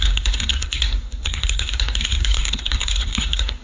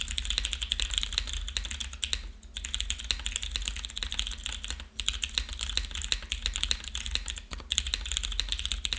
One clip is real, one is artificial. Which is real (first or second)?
second